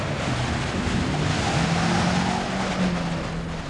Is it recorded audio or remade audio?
recorded